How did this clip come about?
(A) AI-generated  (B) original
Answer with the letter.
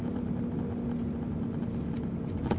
B